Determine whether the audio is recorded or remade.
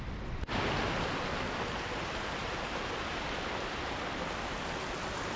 recorded